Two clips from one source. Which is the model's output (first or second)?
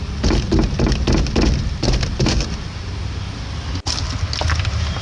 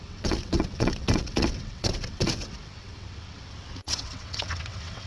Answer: second